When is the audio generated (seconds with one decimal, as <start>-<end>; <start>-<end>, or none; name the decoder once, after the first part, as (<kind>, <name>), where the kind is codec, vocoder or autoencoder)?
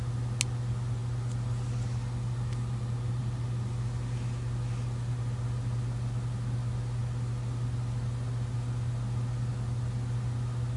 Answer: 1.0-3.2 (vocoder, BigVGAN v2)